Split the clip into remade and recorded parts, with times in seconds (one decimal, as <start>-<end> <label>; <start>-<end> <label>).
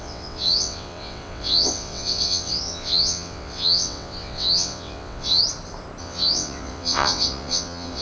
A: 0.0-5.4 remade; 5.4-6.0 recorded; 6.0-8.0 remade